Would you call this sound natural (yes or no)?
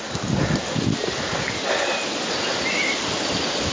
yes